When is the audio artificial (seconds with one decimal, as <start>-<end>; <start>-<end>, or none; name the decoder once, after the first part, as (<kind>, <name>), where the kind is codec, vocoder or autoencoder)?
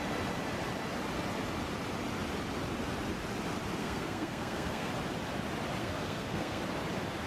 3.8-4.9 (codec, SNAC); 5.8-6.6